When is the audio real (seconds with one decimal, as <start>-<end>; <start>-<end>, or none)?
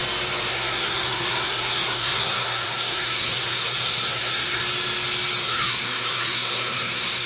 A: 0.0-0.5; 4.6-5.4